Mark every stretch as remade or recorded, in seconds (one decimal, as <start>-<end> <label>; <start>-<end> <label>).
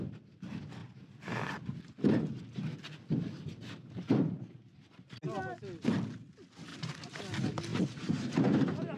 0.0-6.7 recorded; 6.7-7.2 remade; 7.2-7.7 recorded; 7.7-9.0 remade